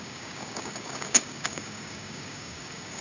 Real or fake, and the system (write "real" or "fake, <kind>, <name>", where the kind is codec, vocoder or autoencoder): fake, codec, DAC